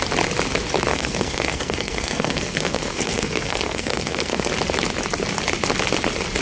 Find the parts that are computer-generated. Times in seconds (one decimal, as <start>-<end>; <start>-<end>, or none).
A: 0.9-4.5